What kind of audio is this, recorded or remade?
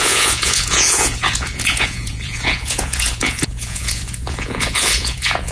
remade